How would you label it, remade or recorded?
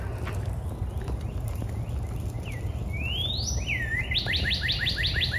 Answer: recorded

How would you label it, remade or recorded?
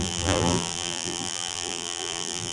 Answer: remade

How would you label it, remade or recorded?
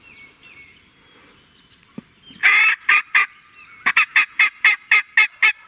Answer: recorded